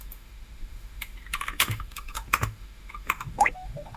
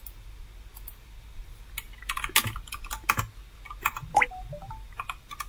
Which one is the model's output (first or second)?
first